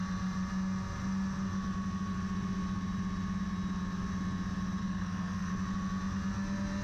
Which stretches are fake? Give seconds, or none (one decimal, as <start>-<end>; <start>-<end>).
4.8-5.5